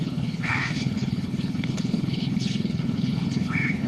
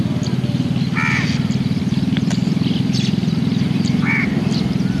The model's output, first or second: first